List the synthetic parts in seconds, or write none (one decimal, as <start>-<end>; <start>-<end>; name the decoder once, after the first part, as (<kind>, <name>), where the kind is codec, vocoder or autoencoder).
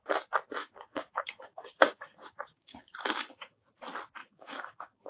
0.6-3.7 (codec, DAC); 4.2-5.1